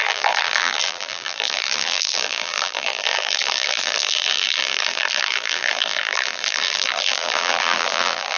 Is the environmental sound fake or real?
fake